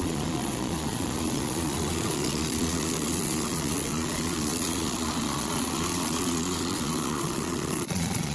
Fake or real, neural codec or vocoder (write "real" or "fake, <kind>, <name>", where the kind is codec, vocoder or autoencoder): fake, vocoder, Vocos